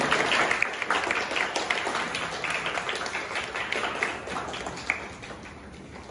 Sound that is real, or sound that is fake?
real